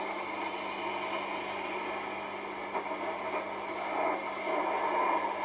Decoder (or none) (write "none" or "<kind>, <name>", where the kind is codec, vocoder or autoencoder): none